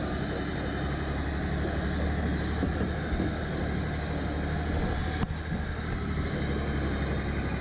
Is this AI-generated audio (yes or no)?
no